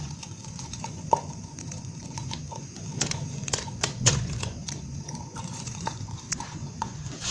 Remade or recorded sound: remade